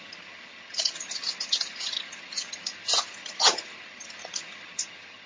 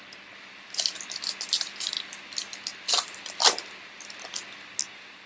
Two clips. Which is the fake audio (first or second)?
first